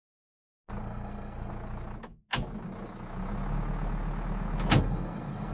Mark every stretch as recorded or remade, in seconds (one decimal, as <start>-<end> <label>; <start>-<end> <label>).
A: 0.0-0.8 recorded; 0.8-1.5 remade; 1.5-4.8 recorded; 4.8-5.5 remade